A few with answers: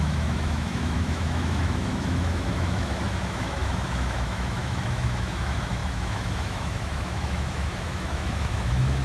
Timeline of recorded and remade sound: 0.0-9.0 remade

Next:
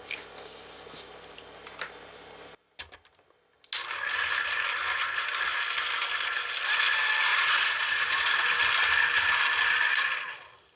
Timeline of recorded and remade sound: 0.0-7.3 recorded; 7.3-8.3 remade; 8.3-10.8 recorded

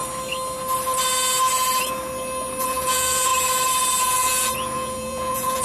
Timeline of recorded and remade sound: 0.0-2.6 recorded; 2.6-3.3 remade; 3.3-4.0 recorded; 4.0-5.6 remade